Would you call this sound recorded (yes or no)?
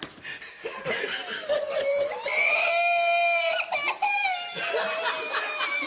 yes